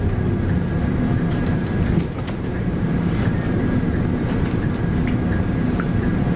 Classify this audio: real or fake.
fake